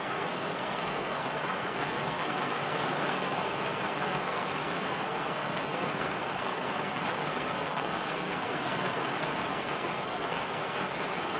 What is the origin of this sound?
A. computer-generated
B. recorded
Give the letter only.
A